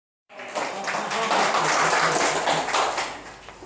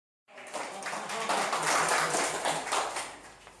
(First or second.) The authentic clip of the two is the first